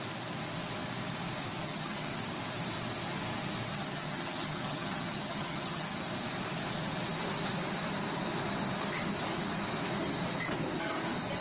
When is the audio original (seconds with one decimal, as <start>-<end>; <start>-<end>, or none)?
0.0-1.6; 2.2-3.7; 6.0-11.4